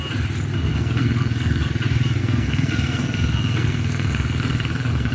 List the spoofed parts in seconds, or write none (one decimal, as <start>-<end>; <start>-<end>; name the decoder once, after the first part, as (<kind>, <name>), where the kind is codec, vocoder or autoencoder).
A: 0.7-1.7 (codec, SNAC); 2.2-5.1